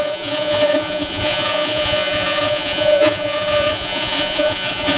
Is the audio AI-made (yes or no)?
yes